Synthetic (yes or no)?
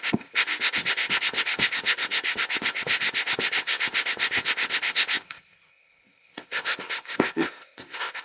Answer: yes